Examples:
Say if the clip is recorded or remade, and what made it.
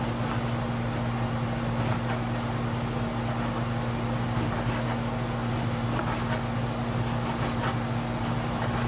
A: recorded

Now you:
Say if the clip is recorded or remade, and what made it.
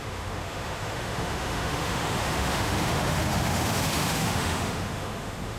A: remade, autoencoder, DAC-VAE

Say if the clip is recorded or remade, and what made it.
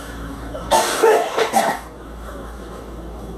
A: remade, codec, DAC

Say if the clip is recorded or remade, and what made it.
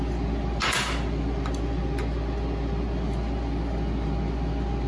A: recorded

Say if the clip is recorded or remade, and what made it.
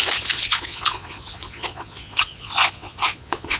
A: remade, vocoder, Vocos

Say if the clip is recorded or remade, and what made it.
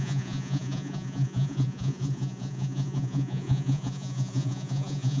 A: remade, vocoder, Vocos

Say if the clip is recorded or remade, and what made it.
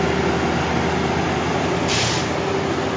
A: recorded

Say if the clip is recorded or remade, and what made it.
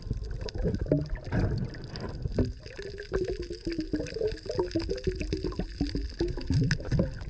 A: recorded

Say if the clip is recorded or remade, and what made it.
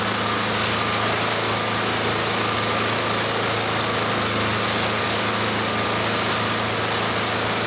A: recorded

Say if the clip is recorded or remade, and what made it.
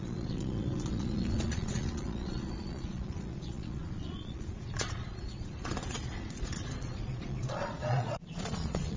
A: remade, vocoder, Vocos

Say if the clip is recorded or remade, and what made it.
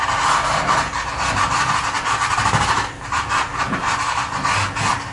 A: recorded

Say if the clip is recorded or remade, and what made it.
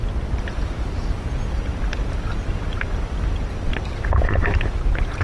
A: recorded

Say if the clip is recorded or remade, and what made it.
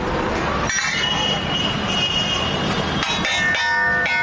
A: recorded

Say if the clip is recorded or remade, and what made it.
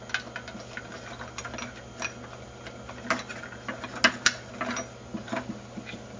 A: recorded